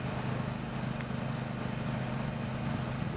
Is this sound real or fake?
real